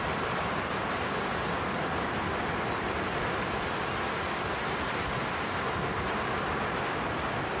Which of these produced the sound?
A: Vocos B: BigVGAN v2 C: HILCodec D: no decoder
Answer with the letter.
D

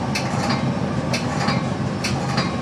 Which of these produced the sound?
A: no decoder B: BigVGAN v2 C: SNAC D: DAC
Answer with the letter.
A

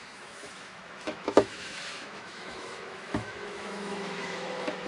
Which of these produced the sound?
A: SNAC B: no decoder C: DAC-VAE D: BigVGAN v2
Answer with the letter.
C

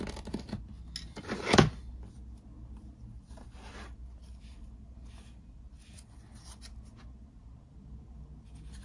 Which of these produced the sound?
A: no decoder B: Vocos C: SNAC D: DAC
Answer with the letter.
A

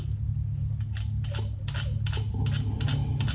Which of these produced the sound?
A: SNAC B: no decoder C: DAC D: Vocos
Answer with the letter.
B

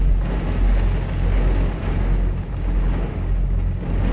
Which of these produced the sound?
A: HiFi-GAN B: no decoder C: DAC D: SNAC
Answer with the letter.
B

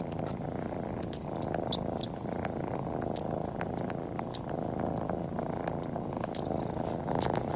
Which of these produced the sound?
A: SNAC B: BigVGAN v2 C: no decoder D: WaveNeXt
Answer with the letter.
C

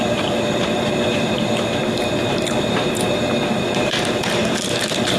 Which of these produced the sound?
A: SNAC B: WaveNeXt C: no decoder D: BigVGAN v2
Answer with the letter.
D